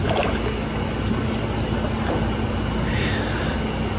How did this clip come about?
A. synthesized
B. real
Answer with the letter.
B